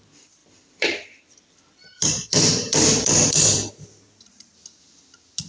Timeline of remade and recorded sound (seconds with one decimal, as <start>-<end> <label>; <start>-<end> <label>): 0.0-0.4 recorded; 0.4-3.7 remade; 3.7-5.5 recorded